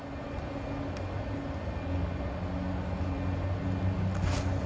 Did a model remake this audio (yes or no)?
no